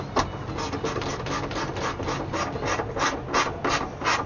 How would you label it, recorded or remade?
recorded